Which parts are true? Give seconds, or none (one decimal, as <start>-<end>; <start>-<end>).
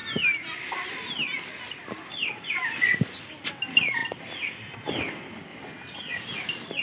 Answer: 0.0-6.8